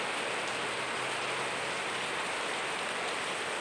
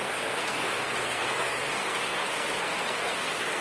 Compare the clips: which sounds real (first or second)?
first